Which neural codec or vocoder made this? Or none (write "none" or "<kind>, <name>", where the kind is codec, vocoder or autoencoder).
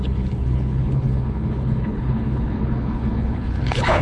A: codec, HILCodec